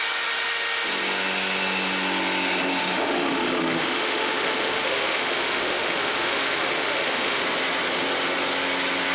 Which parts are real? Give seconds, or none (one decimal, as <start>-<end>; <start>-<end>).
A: 0.0-2.8; 7.4-9.1